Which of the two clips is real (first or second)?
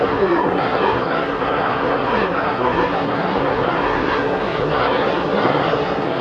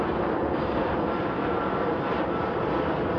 second